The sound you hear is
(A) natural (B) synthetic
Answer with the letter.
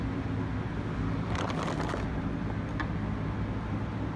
A